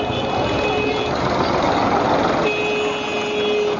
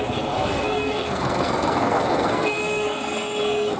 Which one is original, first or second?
first